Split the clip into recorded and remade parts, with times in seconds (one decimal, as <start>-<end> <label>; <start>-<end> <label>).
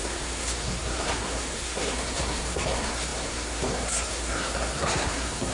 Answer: 0.0-5.5 remade